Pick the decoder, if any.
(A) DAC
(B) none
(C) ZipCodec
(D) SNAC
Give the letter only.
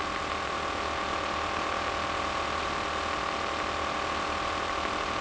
B